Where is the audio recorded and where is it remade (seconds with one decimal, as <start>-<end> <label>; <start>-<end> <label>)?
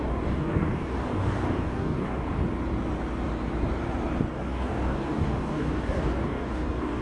0.0-2.4 remade; 2.4-4.3 recorded; 4.3-7.0 remade